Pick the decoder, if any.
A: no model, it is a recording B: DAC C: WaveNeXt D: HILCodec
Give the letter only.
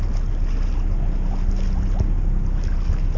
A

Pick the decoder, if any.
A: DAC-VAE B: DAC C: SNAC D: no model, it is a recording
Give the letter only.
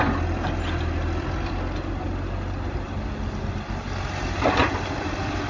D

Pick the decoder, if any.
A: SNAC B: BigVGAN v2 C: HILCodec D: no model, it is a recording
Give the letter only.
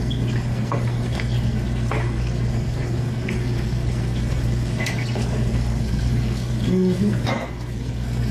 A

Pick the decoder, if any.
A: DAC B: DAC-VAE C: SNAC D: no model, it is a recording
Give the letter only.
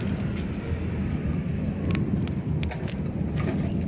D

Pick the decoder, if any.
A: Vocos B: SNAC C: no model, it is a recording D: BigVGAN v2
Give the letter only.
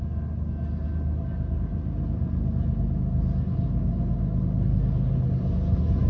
C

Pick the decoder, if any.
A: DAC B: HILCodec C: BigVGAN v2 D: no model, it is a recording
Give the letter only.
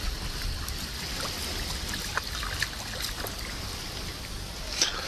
D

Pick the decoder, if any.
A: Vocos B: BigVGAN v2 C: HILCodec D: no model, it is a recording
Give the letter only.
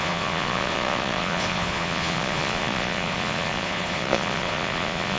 A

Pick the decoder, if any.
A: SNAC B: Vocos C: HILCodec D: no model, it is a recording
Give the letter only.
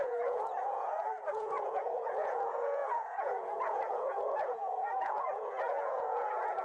B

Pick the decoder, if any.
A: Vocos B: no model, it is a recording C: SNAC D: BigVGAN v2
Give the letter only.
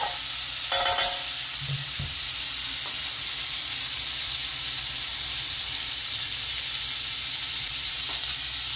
B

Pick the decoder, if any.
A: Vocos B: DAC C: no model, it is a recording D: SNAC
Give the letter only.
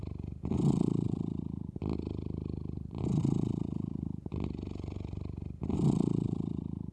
C